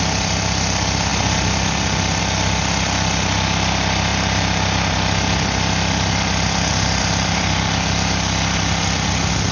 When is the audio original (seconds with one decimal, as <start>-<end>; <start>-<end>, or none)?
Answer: 0.0-9.5